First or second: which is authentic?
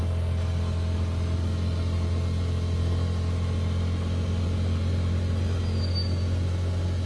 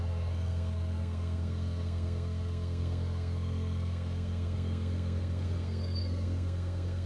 first